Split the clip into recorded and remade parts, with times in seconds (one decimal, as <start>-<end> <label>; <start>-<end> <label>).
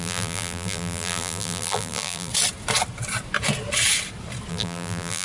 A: 0.0-2.3 remade; 2.3-4.5 recorded; 4.5-5.2 remade